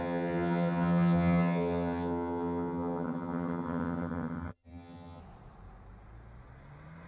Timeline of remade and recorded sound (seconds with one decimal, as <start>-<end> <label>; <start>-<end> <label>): 0.0-5.2 remade; 5.2-7.1 recorded

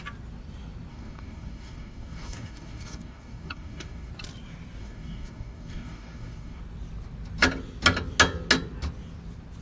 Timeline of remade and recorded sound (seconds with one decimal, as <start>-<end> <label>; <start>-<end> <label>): 0.0-0.9 recorded; 0.9-4.1 remade; 4.1-4.8 recorded; 4.8-6.6 remade; 6.6-9.6 recorded

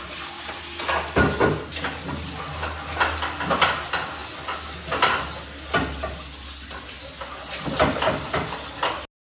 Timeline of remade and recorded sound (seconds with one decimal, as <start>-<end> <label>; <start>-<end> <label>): 0.0-9.4 recorded